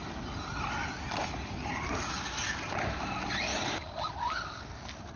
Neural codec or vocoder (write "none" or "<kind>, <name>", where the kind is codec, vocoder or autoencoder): none